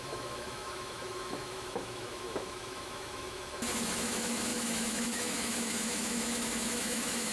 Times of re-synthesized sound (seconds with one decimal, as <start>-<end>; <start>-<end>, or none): 0.0-7.3